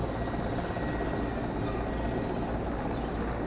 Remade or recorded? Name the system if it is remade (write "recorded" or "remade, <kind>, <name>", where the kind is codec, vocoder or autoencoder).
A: recorded